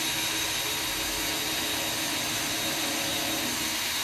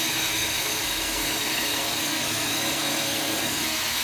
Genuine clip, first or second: first